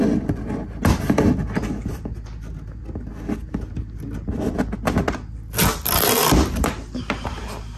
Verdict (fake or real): real